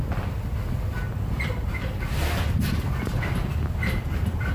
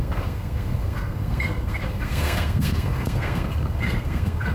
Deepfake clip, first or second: second